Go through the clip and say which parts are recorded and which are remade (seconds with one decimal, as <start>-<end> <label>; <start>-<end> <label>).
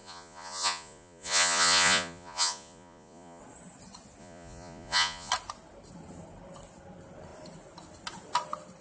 0.0-3.4 remade; 3.4-4.2 recorded; 4.2-5.3 remade; 5.3-8.8 recorded